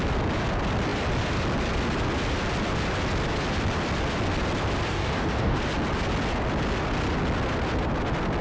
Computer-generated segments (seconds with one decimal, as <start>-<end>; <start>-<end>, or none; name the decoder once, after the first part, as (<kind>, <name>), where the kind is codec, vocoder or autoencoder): 4.9-5.6 (codec, DAC)